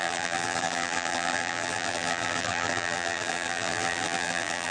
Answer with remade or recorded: remade